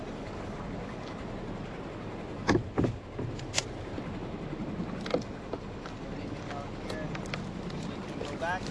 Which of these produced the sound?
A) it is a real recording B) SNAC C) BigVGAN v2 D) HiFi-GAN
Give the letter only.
A